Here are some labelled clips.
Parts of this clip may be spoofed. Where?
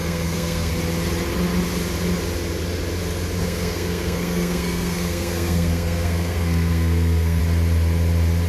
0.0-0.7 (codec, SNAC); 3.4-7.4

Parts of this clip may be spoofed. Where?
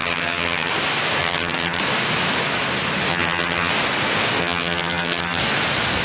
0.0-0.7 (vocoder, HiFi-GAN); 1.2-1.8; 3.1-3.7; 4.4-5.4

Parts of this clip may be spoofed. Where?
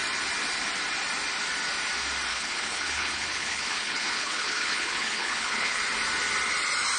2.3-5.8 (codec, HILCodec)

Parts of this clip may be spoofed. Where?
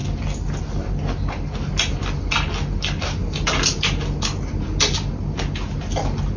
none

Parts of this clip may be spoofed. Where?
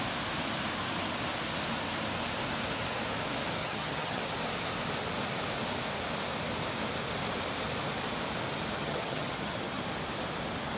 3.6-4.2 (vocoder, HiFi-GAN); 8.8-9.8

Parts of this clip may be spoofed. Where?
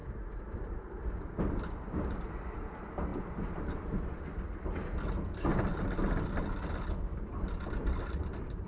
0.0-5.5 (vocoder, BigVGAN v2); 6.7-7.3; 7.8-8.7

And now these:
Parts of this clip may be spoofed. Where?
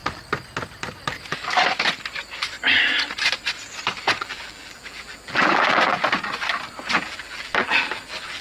4.2-6.0 (vocoder, BigVGAN v2); 6.9-8.4